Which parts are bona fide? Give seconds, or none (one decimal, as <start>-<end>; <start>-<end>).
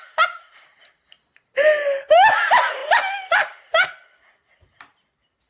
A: 0.0-5.5